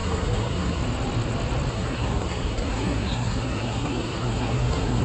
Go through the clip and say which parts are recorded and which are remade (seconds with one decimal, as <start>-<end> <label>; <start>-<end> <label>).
0.0-0.8 remade; 0.8-1.7 recorded; 1.7-5.0 remade